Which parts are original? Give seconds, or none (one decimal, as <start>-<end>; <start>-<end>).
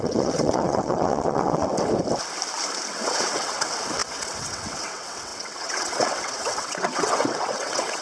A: 1.7-2.9